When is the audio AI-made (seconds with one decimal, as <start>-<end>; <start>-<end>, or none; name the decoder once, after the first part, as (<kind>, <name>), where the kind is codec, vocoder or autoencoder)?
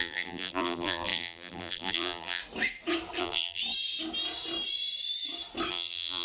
0.0-2.4 (vocoder, BigVGAN v2); 3.2-3.6; 5.7-6.2